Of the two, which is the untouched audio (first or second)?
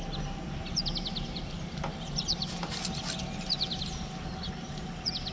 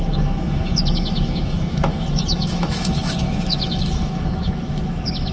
first